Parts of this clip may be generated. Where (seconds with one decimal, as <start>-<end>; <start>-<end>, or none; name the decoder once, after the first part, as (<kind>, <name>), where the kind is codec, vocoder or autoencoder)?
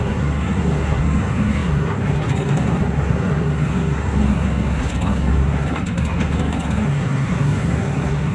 0.0-8.3 (codec, SNAC)